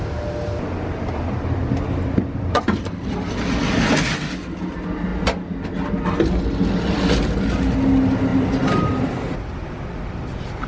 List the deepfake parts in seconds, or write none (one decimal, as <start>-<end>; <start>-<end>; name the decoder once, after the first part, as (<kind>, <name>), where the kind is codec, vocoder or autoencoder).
8.3-8.9 (vocoder, BigVGAN v2)